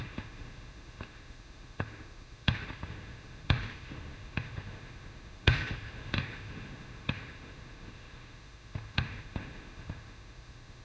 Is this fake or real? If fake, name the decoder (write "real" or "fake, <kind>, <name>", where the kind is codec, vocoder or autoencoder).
fake, autoencoder, DAC-VAE